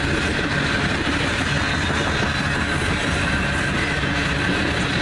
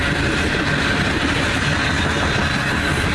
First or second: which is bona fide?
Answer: first